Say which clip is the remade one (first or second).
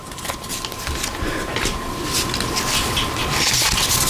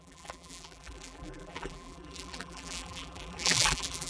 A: second